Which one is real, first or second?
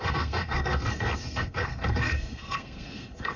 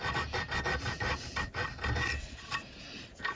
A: second